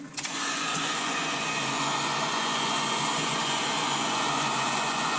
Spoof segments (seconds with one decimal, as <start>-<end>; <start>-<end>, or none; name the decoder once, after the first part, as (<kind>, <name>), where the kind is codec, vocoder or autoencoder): 0.0-5.2 (vocoder, Vocos)

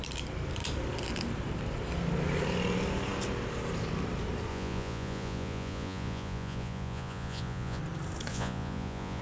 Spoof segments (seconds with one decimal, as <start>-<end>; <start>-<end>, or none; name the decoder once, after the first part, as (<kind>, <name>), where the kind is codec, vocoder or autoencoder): 4.5-7.8 (vocoder, Vocos); 8.3-9.2

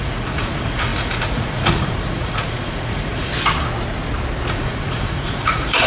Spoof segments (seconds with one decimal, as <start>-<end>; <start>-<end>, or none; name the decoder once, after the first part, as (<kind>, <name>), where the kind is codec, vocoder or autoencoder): 0.0-3.3 (vocoder, Vocos); 4.5-5.9

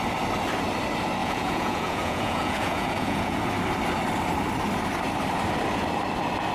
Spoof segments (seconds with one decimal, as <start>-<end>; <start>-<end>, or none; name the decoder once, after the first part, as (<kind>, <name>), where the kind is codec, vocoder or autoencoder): 1.2-3.4 (vocoder, Vocos)

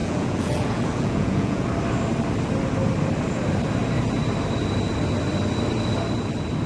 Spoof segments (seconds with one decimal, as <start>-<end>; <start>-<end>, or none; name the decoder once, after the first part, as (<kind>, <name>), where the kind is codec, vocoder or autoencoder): 0.0-1.6 (vocoder, Vocos)